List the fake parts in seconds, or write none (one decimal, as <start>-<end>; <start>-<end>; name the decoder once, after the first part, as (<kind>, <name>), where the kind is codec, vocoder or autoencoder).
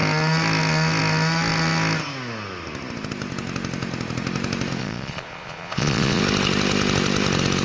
4.8-6.2 (vocoder, Vocos)